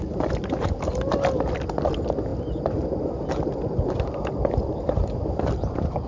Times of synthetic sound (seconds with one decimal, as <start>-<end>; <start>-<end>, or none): none